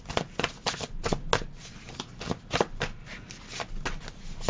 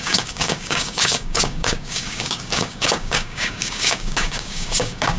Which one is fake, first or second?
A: second